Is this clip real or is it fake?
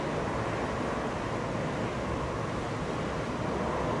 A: real